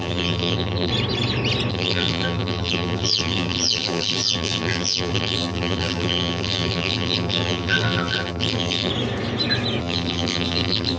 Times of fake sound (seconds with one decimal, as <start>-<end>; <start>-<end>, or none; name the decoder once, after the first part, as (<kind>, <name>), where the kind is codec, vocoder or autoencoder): 0.0-0.9 (vocoder, BigVGAN v2); 1.7-8.9; 9.8-11.0

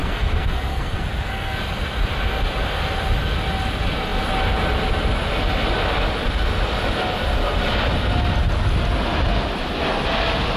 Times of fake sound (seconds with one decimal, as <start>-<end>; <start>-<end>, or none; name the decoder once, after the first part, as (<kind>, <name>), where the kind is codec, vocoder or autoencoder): 0.0-1.6 (codec, SNAC)

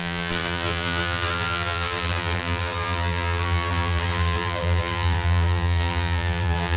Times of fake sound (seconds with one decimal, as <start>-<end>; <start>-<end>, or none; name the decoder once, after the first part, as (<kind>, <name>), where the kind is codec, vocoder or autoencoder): 0.0-6.8 (vocoder, BigVGAN v2)

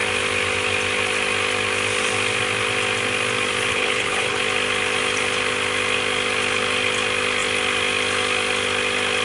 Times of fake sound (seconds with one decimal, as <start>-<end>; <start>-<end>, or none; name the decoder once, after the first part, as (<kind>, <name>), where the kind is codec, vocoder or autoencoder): 3.7-4.4 (codec, HILCodec)

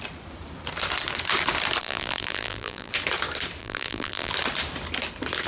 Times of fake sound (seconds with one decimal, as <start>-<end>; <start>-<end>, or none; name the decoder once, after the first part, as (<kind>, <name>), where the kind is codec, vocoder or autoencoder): 1.8-2.9 (vocoder, BigVGAN v2); 3.6-4.3